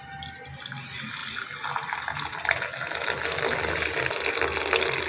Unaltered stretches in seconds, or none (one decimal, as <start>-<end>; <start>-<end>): 0.0-5.1